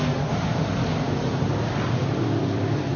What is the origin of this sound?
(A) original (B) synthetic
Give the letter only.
A